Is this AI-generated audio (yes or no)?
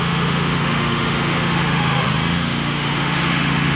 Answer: yes